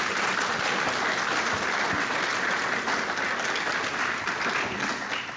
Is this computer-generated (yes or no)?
no